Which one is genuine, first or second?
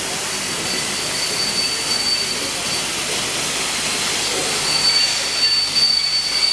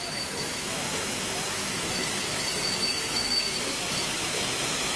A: first